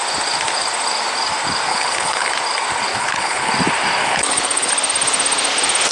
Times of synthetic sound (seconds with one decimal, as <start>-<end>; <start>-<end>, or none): 1.7-2.3; 2.9-3.5; 4.0-4.7